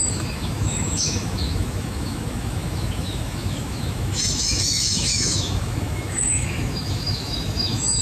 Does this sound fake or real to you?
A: fake